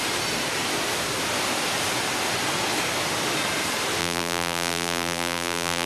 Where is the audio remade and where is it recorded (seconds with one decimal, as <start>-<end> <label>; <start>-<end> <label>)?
0.0-4.0 recorded; 4.0-5.9 remade